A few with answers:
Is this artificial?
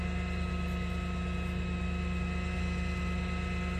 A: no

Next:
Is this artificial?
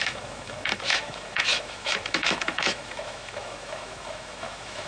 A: yes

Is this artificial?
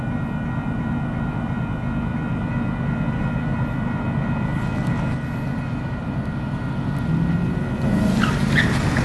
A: no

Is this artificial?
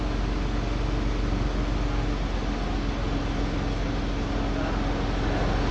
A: no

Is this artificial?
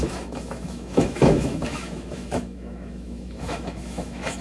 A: yes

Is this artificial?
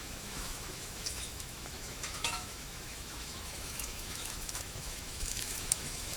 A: yes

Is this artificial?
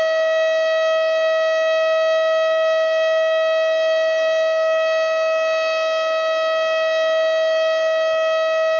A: no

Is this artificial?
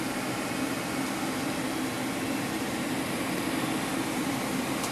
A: no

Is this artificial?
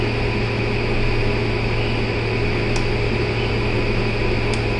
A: no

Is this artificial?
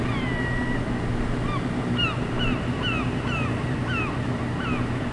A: no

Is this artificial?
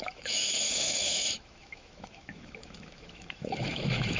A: yes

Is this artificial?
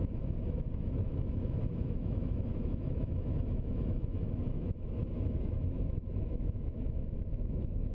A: yes